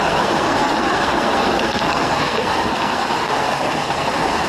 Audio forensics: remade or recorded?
remade